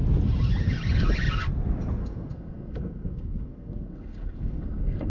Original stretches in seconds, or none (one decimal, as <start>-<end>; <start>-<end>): 0.0-2.0